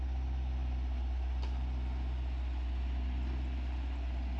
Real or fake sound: real